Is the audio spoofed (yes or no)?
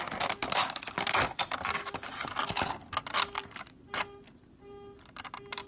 no